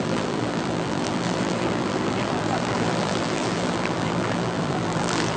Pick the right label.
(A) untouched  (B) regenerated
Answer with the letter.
B